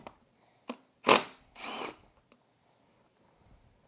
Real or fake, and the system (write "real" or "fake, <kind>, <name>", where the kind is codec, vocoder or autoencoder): real